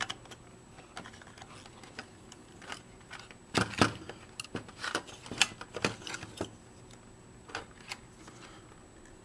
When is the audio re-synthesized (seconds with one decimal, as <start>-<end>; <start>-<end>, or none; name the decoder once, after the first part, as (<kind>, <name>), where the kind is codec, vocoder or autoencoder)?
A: 2.0-2.7 (vocoder, BigVGAN v2)